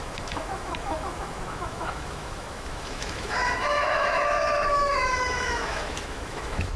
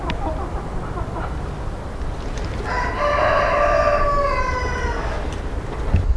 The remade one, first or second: first